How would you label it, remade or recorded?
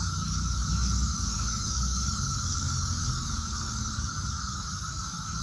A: remade